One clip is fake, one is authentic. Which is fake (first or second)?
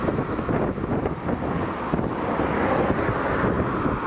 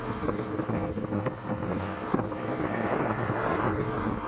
second